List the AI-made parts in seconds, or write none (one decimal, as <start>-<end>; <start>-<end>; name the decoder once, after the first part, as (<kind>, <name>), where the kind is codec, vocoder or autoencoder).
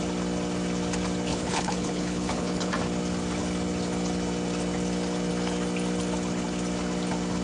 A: 1.3-2.7 (codec, HILCodec)